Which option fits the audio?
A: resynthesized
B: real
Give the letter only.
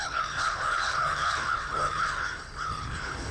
A